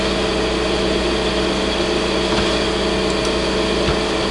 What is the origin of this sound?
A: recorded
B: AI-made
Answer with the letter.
A